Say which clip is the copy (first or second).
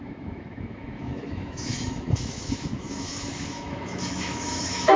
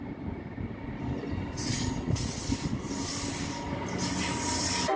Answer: first